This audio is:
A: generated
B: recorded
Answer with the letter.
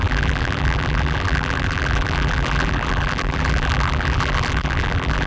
A